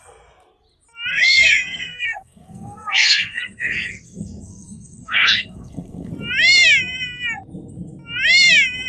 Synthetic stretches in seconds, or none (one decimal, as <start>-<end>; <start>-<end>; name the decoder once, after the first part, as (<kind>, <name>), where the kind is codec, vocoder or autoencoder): 1.1-6.1 (codec, SNAC)